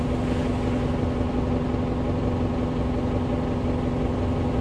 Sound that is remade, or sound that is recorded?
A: recorded